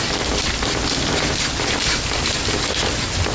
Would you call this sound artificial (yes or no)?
no